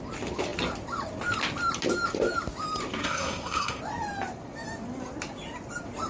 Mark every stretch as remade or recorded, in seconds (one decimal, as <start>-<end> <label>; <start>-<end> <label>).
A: 0.0-3.0 recorded; 3.0-3.8 remade; 3.8-6.1 recorded

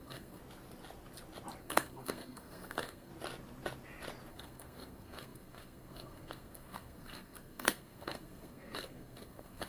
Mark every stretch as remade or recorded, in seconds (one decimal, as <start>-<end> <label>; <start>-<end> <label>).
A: 0.0-0.4 remade; 0.4-1.6 recorded; 1.6-3.1 remade; 3.1-4.3 recorded; 4.3-9.7 remade

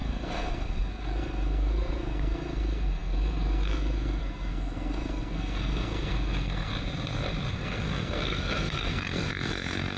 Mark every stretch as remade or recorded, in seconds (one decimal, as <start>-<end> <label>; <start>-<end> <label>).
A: 0.0-6.7 remade; 6.7-7.5 recorded; 7.5-10.0 remade

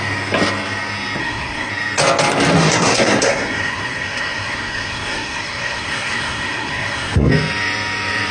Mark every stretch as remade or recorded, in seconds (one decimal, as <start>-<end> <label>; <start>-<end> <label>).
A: 0.0-1.2 recorded; 1.2-1.7 remade; 1.7-2.6 recorded; 2.6-7.3 remade; 7.3-8.3 recorded

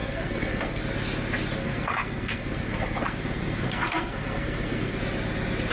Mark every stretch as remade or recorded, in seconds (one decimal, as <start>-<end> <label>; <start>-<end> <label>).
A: 0.0-0.8 remade; 0.8-1.6 recorded; 1.6-5.0 remade; 5.0-5.7 recorded